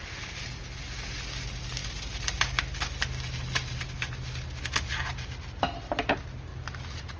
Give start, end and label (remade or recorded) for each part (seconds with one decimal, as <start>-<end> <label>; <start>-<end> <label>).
0.0-7.2 recorded